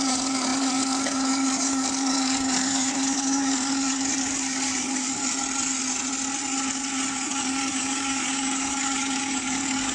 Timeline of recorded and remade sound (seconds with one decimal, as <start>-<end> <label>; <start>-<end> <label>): 0.0-5.2 remade; 5.2-7.1 recorded; 7.1-9.9 remade